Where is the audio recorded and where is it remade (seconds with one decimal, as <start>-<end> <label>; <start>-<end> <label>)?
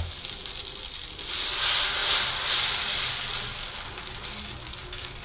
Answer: 0.0-5.2 recorded